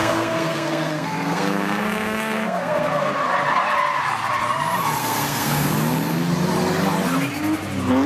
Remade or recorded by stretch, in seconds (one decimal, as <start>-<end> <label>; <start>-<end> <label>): 0.0-3.1 remade; 3.1-5.0 recorded; 5.0-5.7 remade; 5.7-8.1 recorded